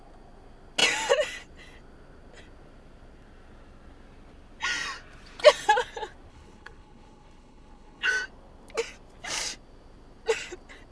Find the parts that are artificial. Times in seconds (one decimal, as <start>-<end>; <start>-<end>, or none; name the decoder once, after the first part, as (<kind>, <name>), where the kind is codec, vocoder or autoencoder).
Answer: 6.3-8.1 (codec, HILCodec)